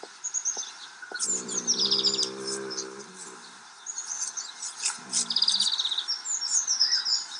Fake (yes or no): no